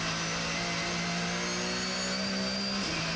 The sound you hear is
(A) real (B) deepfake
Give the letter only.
A